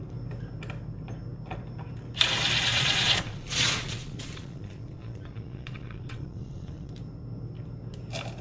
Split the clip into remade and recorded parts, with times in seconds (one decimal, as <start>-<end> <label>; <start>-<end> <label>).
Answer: 0.0-2.7 recorded; 2.7-6.9 remade; 6.9-8.4 recorded